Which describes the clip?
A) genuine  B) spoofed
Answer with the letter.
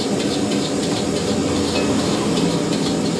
A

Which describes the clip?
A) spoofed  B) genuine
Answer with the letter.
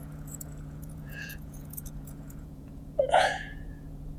A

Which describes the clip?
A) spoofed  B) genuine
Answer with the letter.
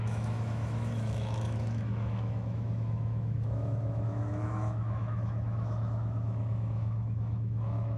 A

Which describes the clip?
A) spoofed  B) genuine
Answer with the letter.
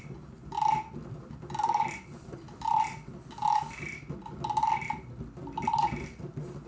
B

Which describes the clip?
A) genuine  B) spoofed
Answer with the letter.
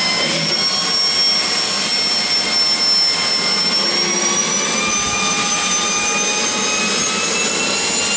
A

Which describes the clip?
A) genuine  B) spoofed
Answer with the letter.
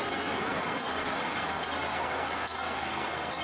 B